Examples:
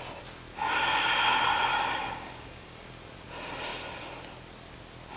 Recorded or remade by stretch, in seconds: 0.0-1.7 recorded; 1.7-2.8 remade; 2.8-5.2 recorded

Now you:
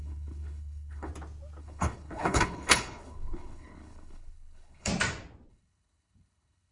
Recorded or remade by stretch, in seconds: 0.0-1.1 remade; 1.1-1.6 recorded; 1.6-4.9 remade; 4.9-5.5 recorded; 5.5-6.7 remade

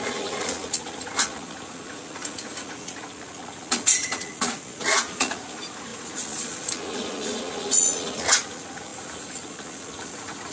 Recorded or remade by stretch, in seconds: 0.0-10.5 remade

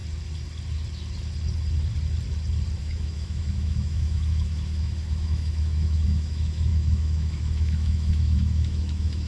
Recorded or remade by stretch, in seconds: 0.0-2.8 recorded; 2.8-9.3 remade

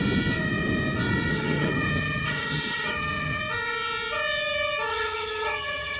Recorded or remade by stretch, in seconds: 0.0-1.3 recorded; 1.3-3.4 remade; 3.4-4.9 recorded; 4.9-6.0 remade

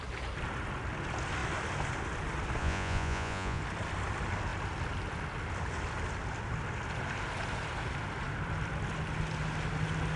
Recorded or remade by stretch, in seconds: 0.0-2.6 recorded; 2.6-3.6 remade; 3.6-10.2 recorded